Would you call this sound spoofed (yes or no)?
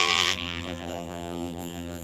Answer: yes